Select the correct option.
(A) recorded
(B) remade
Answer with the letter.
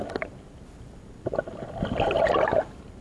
A